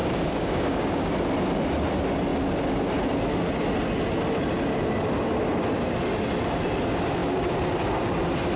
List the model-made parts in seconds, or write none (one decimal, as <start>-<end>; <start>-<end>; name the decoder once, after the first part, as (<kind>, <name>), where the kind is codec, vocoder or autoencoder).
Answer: 0.0-1.1 (codec, DAC)